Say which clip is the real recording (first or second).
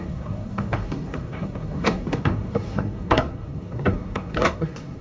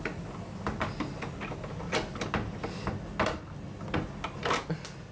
second